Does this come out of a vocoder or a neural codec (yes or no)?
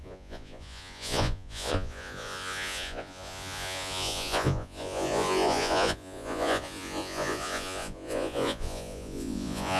yes